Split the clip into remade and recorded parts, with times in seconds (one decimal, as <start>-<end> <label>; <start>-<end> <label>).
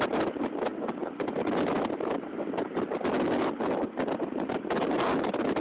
0.0-5.6 recorded